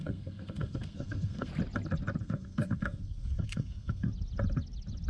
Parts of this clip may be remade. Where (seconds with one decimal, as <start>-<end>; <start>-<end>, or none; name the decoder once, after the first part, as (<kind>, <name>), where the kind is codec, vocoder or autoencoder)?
0.0-1.5 (codec, SNAC); 2.2-4.1